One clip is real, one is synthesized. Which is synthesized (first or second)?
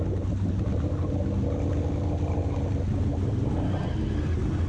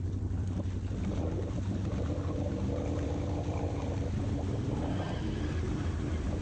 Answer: second